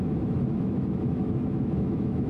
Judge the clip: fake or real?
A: fake